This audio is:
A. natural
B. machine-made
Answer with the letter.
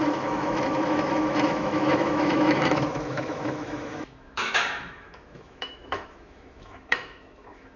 B